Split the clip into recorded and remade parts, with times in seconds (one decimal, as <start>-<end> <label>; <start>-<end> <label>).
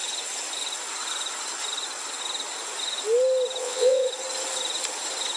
0.0-3.6 recorded; 3.6-4.1 remade; 4.1-5.4 recorded